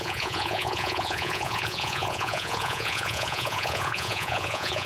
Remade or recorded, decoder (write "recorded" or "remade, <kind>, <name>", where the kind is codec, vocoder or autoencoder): remade, vocoder, Vocos